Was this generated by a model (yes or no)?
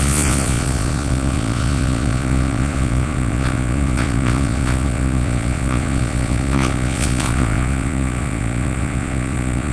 yes